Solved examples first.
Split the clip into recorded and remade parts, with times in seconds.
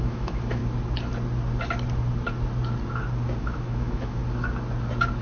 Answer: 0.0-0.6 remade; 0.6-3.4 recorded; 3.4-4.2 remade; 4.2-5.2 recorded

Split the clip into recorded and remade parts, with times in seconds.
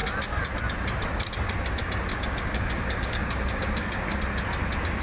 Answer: 0.0-2.1 recorded; 2.1-4.2 remade; 4.2-5.0 recorded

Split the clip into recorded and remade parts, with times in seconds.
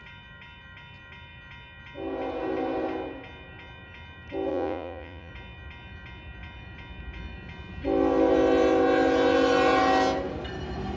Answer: 0.0-4.5 recorded; 4.5-5.3 remade; 5.3-11.0 recorded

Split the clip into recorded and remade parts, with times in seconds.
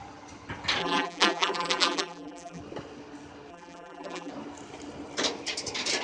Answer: 0.0-0.8 recorded; 0.8-2.6 remade; 2.6-3.5 recorded; 3.5-4.3 remade; 4.3-6.0 recorded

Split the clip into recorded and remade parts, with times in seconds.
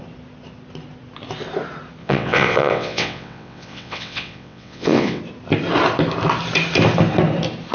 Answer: 0.0-2.0 recorded; 2.0-5.2 remade; 5.2-7.7 recorded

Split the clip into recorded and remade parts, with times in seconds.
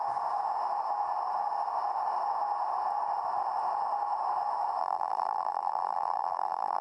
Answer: 0.0-4.8 recorded; 4.8-6.8 remade